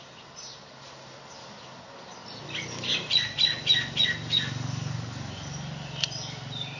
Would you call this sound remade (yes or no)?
no